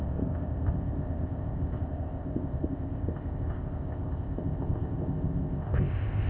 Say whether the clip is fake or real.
fake